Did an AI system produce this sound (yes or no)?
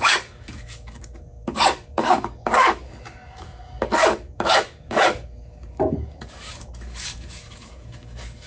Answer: yes